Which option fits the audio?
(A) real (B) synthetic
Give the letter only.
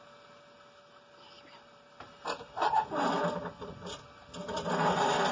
A